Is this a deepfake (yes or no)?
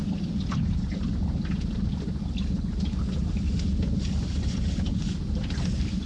no